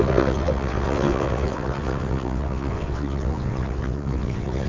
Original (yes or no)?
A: no